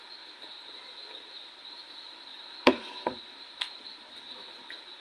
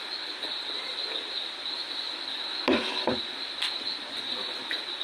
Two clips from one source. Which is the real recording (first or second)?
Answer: second